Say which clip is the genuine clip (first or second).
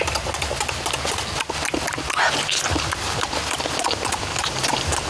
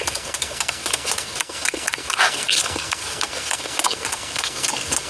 first